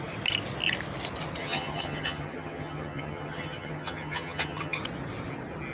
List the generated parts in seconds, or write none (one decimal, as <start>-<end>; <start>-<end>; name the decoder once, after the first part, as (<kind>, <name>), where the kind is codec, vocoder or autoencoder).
1.4-4.8 (vocoder, HiFi-GAN)